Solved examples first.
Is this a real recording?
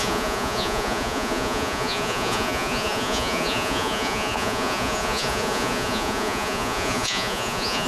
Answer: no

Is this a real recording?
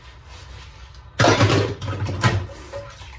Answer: yes